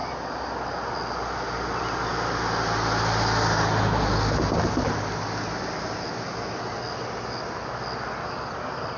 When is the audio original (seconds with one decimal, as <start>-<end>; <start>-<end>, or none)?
0.0-9.0